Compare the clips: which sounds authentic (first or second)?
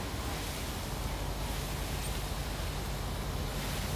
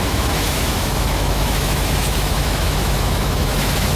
first